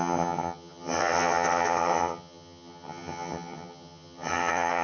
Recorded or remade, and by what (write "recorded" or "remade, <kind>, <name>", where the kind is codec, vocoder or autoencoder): remade, vocoder, HiFi-GAN